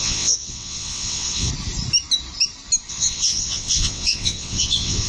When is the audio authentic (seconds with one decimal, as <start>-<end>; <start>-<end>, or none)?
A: 1.5-2.9